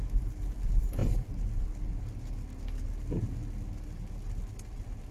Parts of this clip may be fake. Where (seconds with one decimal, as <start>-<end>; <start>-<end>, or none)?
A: none